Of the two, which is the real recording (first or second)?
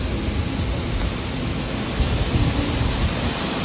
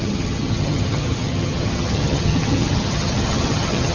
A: first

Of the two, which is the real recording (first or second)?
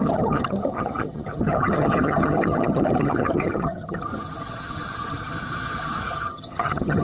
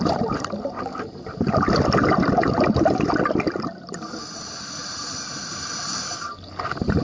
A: second